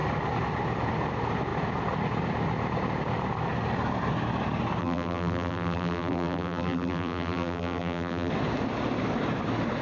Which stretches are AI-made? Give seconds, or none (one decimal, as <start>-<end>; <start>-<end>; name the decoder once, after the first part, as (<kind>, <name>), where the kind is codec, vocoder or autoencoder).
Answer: 4.8-8.3 (vocoder, BigVGAN v2)